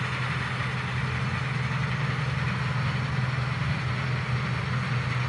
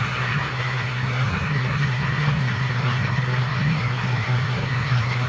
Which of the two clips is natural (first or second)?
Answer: first